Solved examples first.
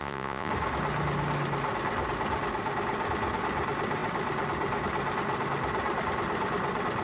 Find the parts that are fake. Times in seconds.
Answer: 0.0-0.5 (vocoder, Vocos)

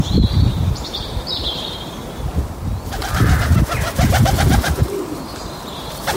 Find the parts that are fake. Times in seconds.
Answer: 0.0-2.0 (vocoder, BigVGAN v2); 5.7-6.2

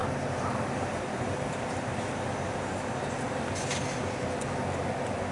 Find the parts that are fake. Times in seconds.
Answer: none

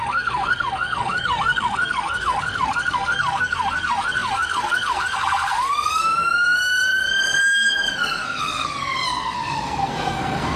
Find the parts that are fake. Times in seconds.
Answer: 0.0-10.6 (codec, SNAC)

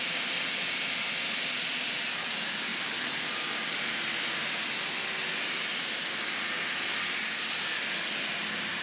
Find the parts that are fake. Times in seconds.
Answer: none

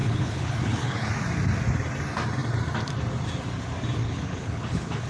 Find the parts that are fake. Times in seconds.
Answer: 0.0-1.1 (codec, HILCodec); 4.0-5.1

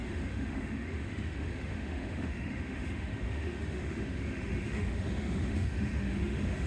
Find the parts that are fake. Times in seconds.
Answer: 0.0-6.7 (autoencoder, DAC-VAE)